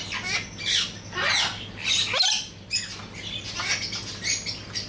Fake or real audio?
real